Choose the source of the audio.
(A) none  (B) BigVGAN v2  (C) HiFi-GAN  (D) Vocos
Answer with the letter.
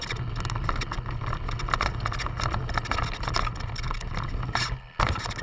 A